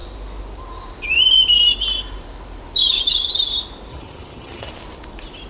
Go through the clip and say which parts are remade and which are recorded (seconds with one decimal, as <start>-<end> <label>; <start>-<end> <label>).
0.0-3.9 recorded; 3.9-4.7 remade; 4.7-5.5 recorded